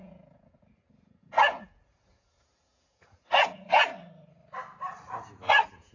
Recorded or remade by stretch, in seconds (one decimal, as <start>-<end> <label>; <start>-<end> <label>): 0.0-3.9 remade; 3.9-5.2 recorded; 5.2-5.9 remade